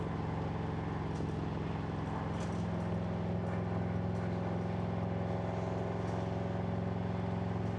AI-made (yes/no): no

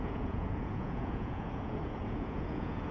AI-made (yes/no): yes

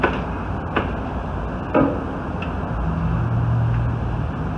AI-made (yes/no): no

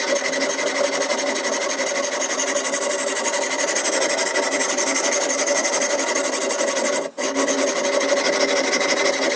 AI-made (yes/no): no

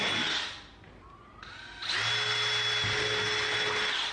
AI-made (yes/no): no